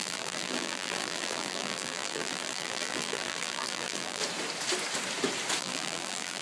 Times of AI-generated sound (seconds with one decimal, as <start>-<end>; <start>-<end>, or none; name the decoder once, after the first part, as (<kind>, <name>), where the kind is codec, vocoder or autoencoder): 0.0-4.2 (vocoder, BigVGAN v2); 5.6-6.4